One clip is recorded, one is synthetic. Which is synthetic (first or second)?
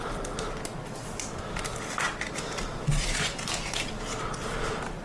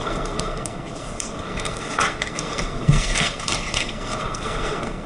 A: second